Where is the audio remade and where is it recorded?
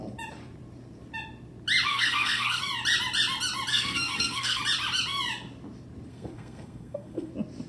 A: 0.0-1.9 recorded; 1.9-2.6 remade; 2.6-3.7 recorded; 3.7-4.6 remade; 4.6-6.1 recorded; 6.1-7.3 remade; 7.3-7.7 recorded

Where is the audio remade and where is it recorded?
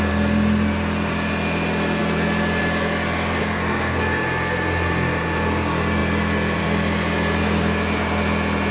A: 0.0-3.4 recorded; 3.4-4.0 remade; 4.0-8.7 recorded